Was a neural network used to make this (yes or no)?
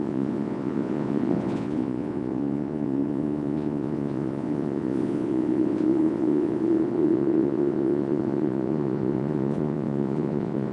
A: yes